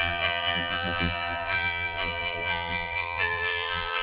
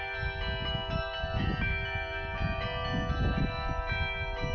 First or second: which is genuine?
second